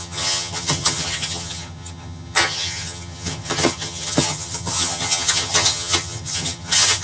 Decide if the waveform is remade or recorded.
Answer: remade